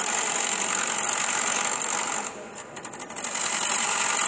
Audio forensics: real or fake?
fake